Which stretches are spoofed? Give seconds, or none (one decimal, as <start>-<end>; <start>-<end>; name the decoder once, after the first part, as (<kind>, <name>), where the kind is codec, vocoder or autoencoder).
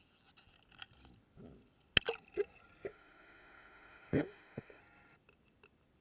2.9-4.8 (autoencoder, DAC-VAE)